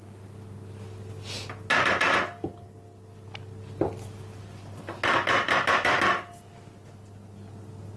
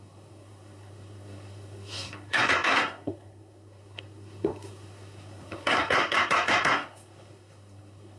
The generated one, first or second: second